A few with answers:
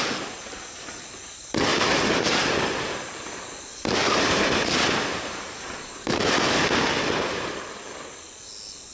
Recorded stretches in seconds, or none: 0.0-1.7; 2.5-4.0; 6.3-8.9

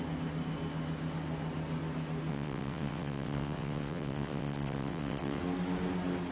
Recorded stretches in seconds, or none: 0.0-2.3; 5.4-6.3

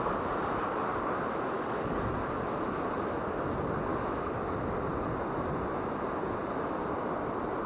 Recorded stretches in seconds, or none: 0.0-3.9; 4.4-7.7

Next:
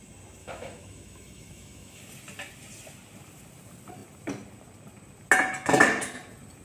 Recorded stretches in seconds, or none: 0.0-0.4; 2.1-6.6

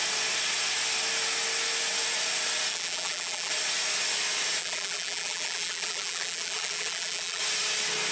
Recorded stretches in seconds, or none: 0.0-2.7; 3.5-4.6; 7.4-8.1